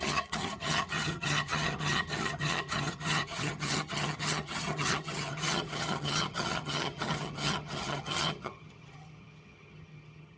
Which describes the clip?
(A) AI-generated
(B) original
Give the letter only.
A